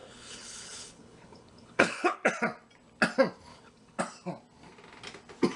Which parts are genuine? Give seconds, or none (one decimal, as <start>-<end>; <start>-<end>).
2.3-3.5; 4.0-5.6